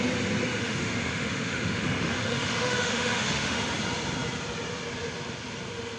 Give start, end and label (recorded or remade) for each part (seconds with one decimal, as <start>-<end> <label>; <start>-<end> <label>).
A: 0.0-0.6 recorded; 0.6-3.7 remade; 3.7-6.0 recorded